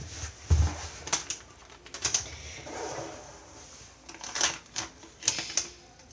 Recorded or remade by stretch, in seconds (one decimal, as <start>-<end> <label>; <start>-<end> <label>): 0.0-6.1 recorded